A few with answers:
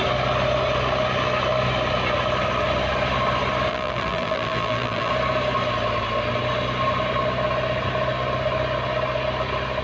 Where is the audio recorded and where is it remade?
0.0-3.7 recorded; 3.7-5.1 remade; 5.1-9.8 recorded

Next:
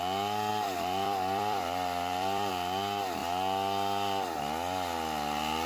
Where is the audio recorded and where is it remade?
0.0-0.5 recorded; 0.5-2.5 remade; 2.5-5.7 recorded